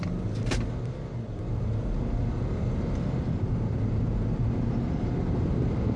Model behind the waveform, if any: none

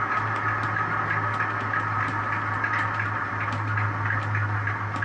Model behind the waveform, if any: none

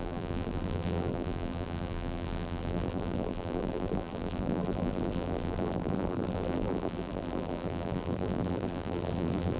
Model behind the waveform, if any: vocoder, BigVGAN v2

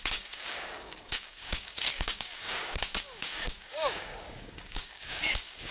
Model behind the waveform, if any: codec, DAC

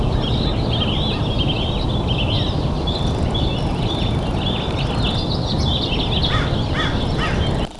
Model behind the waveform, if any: none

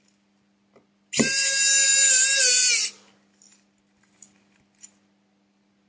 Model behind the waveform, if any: none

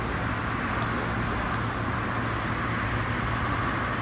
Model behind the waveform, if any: none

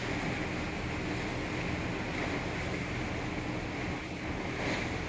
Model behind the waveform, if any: none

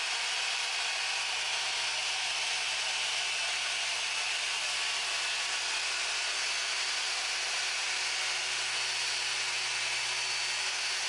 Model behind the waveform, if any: none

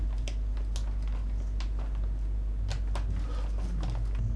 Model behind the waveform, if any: none